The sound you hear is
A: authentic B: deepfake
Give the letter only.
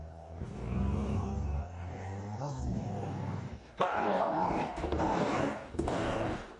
B